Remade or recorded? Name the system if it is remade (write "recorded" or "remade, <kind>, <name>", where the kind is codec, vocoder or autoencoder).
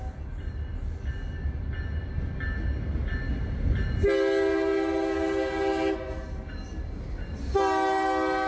recorded